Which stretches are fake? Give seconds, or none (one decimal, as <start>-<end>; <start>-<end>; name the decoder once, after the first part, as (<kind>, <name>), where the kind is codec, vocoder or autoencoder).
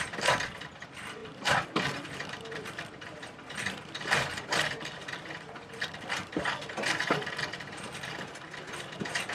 0.0-9.3 (vocoder, BigVGAN v2)